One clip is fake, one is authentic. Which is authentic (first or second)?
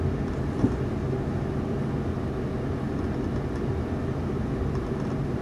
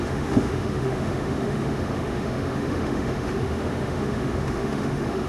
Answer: first